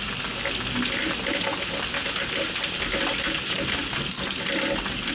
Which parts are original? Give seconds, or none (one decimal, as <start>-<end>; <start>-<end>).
0.0-5.1